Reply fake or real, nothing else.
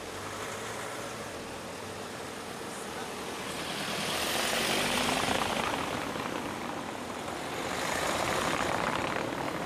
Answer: fake